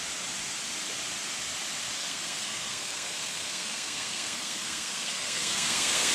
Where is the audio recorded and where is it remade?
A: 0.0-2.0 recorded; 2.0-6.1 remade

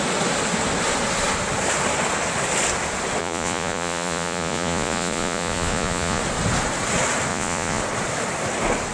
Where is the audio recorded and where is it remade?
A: 0.0-3.2 recorded; 3.2-6.2 remade; 6.2-7.3 recorded; 7.3-7.8 remade; 7.8-8.9 recorded

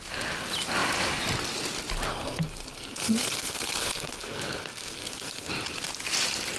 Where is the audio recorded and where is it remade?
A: 0.0-2.1 recorded; 2.1-5.5 remade; 5.5-6.6 recorded

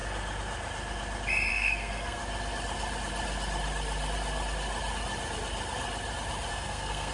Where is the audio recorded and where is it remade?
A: 0.0-1.5 recorded; 1.5-2.2 remade; 2.2-6.5 recorded; 6.5-7.1 remade

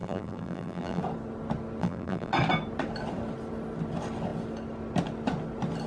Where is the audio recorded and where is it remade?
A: 0.0-1.0 remade; 1.0-1.8 recorded; 1.8-2.3 remade; 2.3-5.9 recorded

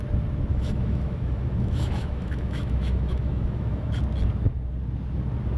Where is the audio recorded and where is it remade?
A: 0.0-0.5 recorded; 0.5-3.9 remade; 3.9-5.6 recorded

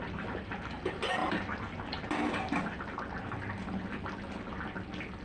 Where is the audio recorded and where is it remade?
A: 0.0-5.2 recorded